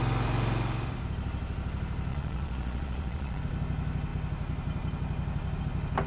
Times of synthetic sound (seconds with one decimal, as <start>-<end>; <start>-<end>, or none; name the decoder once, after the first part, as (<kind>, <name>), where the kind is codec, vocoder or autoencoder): 2.1-3.4 (vocoder, Vocos)